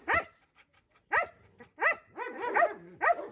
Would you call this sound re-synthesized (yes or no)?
no